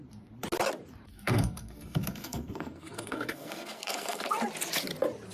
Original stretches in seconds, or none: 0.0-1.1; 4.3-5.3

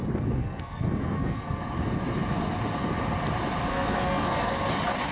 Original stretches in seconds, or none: 0.0-0.4; 1.6-3.7; 4.6-5.1

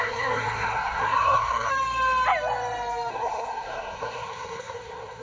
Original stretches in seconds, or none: 1.7-3.1